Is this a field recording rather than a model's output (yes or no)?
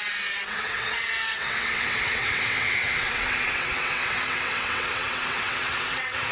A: no